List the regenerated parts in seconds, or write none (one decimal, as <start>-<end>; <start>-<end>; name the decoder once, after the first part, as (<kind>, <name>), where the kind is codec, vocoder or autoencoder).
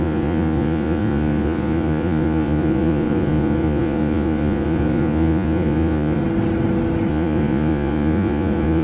0.0-6.2 (vocoder, Vocos); 7.1-8.8